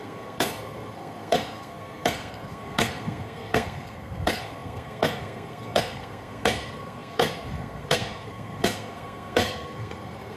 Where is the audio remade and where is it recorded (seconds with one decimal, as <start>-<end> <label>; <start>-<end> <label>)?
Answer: 0.0-10.4 remade